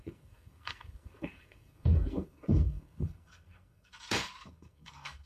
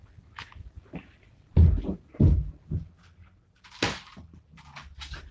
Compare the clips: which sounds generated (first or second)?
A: first